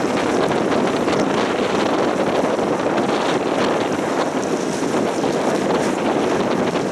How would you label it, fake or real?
real